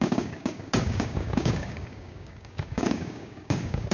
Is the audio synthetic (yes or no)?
yes